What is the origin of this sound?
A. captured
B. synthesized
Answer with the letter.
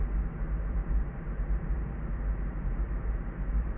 B